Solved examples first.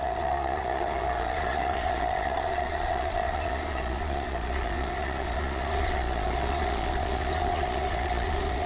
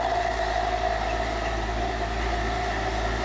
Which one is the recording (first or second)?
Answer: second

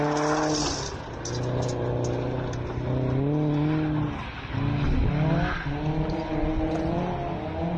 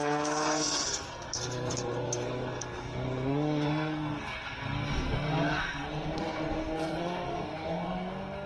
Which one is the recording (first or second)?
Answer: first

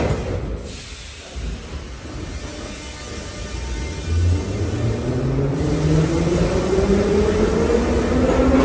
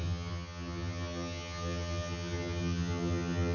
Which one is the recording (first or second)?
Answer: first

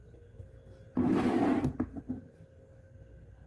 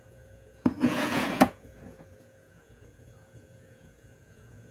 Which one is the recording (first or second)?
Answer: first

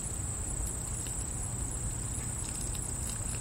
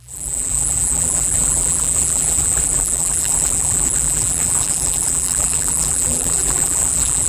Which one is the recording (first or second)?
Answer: first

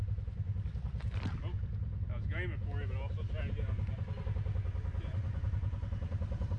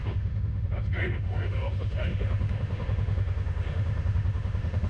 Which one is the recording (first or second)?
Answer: first